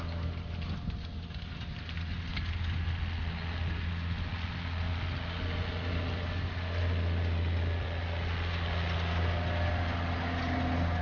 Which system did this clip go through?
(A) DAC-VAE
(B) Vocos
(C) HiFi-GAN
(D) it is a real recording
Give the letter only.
D